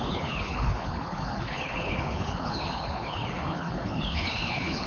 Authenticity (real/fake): fake